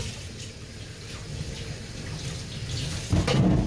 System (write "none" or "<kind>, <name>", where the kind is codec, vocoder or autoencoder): none